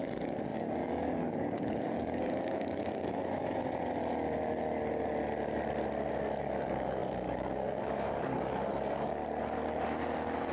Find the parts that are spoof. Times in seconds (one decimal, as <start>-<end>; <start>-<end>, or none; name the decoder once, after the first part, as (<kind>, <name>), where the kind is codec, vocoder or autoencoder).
0.0-3.6 (codec, DAC); 6.4-9.2